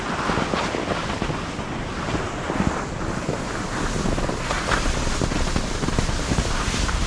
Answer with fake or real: real